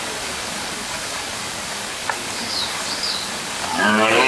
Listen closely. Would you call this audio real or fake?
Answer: fake